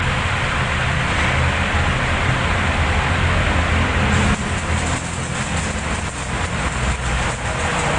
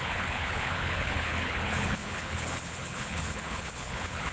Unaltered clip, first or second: first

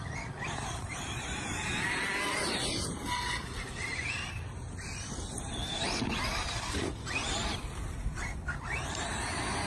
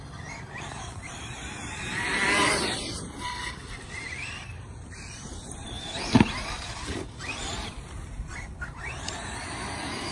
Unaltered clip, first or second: first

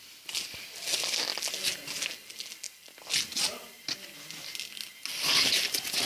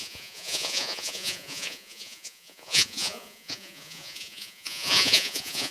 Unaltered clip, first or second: first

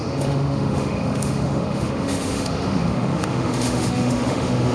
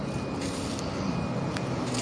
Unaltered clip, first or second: second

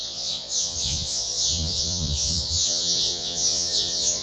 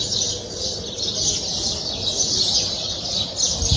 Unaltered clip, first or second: second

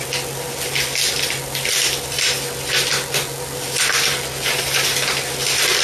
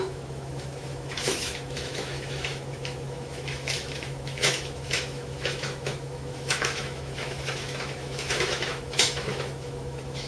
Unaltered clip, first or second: first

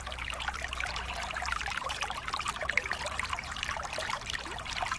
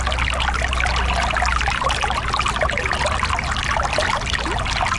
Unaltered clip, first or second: second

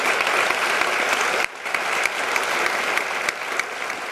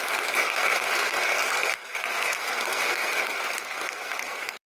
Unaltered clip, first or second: first